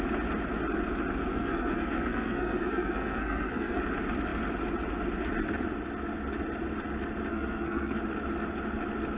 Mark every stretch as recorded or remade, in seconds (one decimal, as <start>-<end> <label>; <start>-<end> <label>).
0.0-1.3 recorded; 1.3-3.8 remade; 3.8-7.3 recorded; 7.3-8.0 remade; 8.0-9.2 recorded